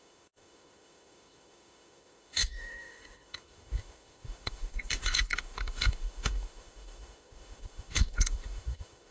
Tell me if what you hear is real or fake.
fake